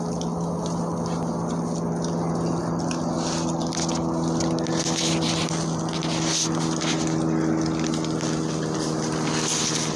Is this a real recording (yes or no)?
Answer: yes